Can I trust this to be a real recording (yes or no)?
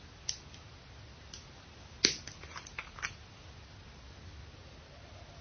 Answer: yes